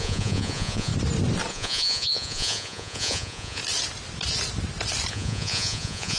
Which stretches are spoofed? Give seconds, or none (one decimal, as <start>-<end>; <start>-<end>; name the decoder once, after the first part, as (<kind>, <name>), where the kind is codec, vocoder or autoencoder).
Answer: 0.0-0.9 (vocoder, Vocos); 1.5-3.6; 5.1-6.2